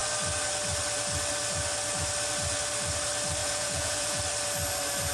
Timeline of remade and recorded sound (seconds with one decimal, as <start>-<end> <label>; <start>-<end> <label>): 0.0-3.4 recorded; 3.4-4.2 remade; 4.2-5.1 recorded